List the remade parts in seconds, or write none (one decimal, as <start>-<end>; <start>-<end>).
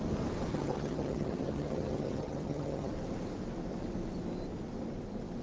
0.5-2.9